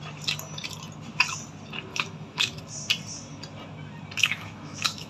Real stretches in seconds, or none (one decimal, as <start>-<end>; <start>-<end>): 0.0-1.9; 2.6-4.2